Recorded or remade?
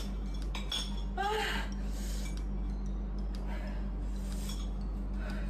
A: recorded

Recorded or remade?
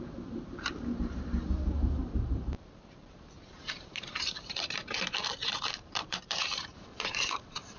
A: remade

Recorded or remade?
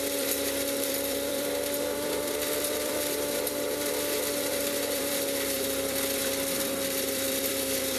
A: remade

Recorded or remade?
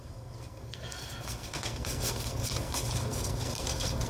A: remade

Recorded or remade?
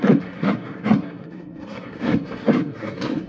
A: remade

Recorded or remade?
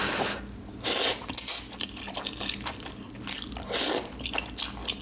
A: recorded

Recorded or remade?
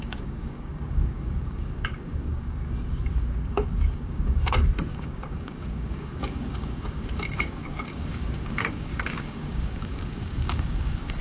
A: remade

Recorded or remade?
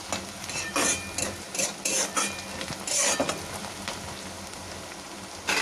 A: recorded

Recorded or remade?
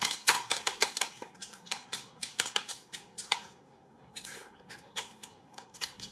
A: remade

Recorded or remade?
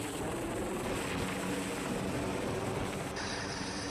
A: recorded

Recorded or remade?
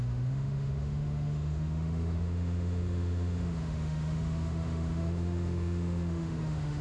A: remade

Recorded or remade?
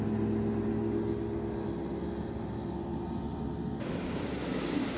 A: recorded